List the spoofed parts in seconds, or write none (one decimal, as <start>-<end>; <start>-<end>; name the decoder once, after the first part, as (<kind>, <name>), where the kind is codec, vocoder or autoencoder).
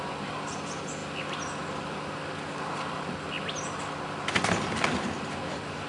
none